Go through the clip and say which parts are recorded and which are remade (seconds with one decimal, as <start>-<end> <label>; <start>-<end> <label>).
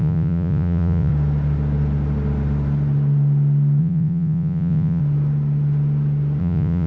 0.0-1.1 remade; 1.1-3.8 recorded; 3.8-5.0 remade; 5.0-6.4 recorded; 6.4-6.9 remade